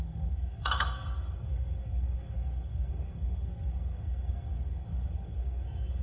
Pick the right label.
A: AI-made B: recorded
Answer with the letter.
A